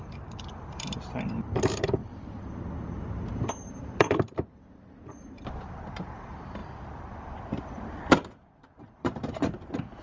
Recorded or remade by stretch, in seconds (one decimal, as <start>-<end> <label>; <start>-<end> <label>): 0.0-6.6 remade; 6.6-8.8 recorded; 8.8-10.0 remade